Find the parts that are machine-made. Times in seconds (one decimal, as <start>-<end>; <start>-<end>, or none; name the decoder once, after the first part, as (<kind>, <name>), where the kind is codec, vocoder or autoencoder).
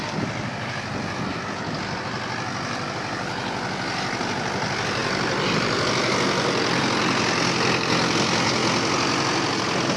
5.0-6.8 (vocoder, BigVGAN v2)